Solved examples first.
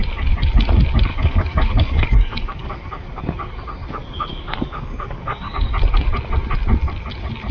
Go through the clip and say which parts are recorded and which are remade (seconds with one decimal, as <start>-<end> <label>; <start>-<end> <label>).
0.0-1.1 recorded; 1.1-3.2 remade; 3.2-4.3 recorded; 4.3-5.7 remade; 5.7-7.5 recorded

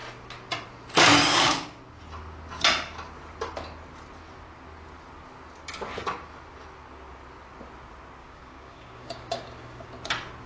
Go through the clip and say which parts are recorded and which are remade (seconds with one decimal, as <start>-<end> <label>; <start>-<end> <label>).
0.0-1.2 recorded; 1.2-1.8 remade; 1.8-8.2 recorded; 8.2-9.9 remade; 9.9-10.5 recorded

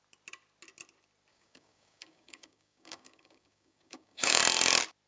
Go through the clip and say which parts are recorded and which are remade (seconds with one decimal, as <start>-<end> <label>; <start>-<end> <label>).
0.0-1.3 recorded; 1.3-4.4 remade; 4.4-5.1 recorded

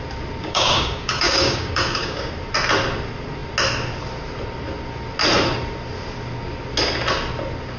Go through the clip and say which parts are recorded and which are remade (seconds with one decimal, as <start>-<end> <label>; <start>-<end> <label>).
0.0-0.4 recorded; 0.4-2.3 remade; 2.3-7.8 recorded

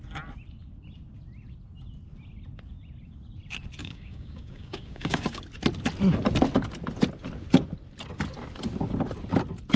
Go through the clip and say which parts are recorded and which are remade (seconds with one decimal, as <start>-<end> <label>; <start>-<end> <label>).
0.0-3.8 recorded; 3.8-5.4 remade; 5.4-9.8 recorded